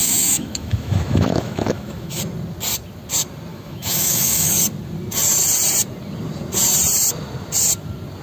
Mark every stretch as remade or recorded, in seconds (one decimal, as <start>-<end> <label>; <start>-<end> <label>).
0.0-2.2 remade; 2.2-3.5 recorded; 3.5-4.5 remade; 4.5-8.2 recorded